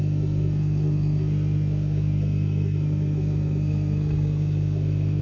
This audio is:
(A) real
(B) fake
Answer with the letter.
B